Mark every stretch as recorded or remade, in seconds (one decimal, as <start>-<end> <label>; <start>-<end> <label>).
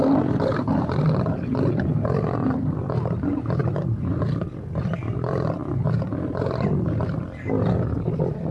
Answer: 0.0-8.5 recorded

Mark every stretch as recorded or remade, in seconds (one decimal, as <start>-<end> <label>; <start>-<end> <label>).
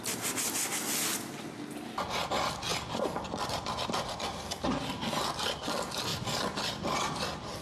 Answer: 0.0-2.7 recorded; 2.7-4.5 remade; 4.5-6.1 recorded; 6.1-7.6 remade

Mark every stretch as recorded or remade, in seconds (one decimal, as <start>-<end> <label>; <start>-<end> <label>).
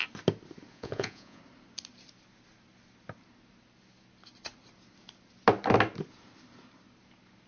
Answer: 0.0-0.7 recorded; 0.7-1.4 remade; 1.4-7.5 recorded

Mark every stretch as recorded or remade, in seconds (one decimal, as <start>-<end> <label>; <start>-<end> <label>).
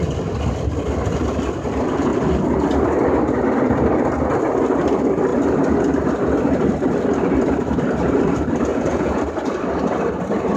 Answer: 0.0-8.7 recorded; 8.7-9.2 remade; 9.2-10.6 recorded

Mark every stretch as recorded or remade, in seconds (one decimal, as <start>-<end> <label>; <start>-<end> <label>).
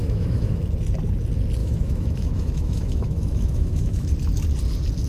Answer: 0.0-0.6 remade; 0.6-1.6 recorded; 1.6-4.1 remade; 4.1-5.1 recorded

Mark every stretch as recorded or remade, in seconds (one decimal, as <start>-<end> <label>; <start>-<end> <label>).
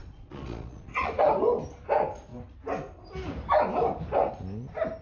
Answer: 0.0-1.1 remade; 1.1-5.0 recorded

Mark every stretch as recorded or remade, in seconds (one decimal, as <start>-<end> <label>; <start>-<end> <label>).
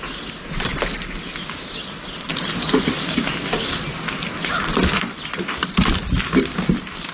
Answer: 0.0-7.1 recorded